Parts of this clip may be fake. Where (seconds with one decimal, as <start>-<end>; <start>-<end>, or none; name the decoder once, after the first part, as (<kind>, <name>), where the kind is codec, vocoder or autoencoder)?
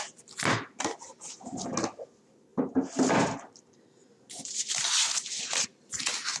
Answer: none